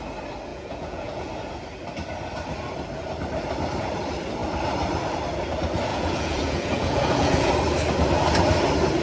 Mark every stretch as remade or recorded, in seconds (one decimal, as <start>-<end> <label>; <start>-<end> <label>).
0.0-0.5 recorded; 0.5-1.3 remade; 1.3-5.9 recorded; 5.9-7.5 remade; 7.5-9.0 recorded